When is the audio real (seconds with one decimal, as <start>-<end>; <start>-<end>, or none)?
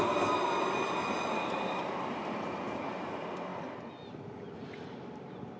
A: 0.0-5.6